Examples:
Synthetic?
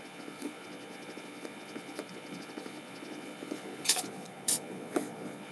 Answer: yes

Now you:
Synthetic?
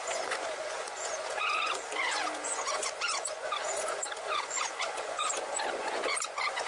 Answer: yes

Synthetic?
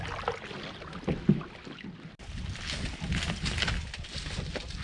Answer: no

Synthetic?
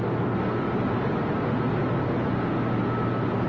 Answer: no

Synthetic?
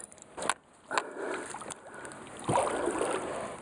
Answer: no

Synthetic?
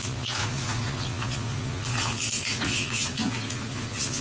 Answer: yes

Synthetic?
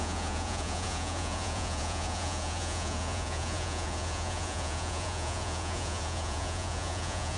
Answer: yes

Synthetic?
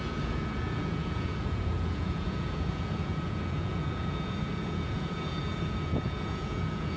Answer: yes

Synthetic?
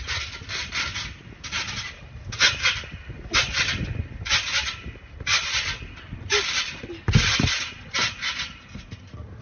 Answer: no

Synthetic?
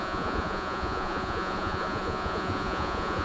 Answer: yes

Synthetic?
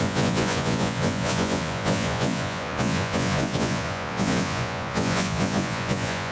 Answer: yes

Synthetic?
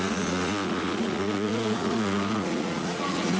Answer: yes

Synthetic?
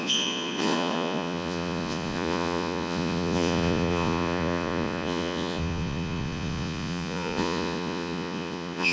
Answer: yes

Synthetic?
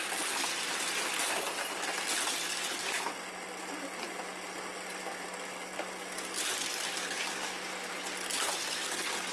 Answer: no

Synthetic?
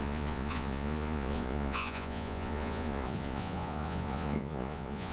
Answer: yes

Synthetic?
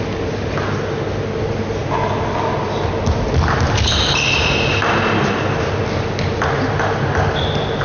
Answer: no